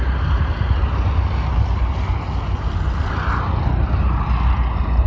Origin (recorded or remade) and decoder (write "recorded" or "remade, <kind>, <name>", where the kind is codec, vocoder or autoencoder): recorded